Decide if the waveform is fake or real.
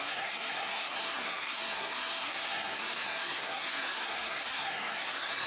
fake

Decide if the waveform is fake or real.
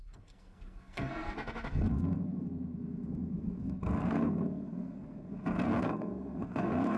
fake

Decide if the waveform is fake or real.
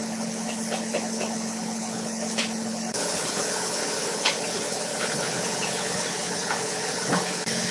fake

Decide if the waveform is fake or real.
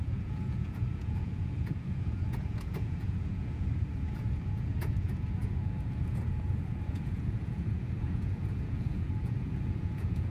fake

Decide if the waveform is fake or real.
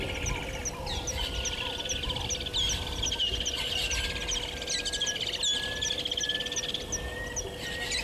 real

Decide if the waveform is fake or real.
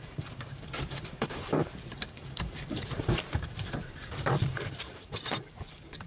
fake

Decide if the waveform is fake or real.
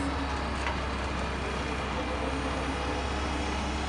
real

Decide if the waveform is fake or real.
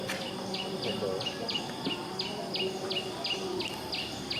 real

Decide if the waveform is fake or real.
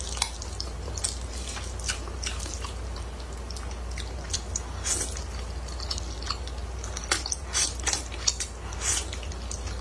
real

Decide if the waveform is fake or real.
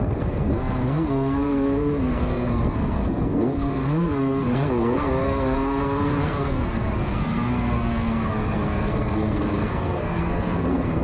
fake